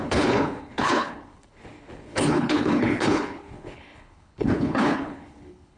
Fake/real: fake